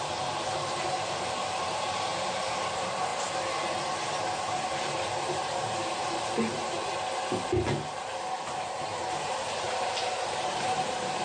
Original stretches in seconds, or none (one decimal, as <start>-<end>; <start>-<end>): 3.1-4.2; 6.6-8.3